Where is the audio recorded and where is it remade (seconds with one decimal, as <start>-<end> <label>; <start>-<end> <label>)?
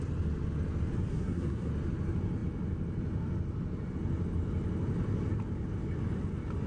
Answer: 0.0-1.1 recorded; 1.1-1.7 remade; 1.7-6.7 recorded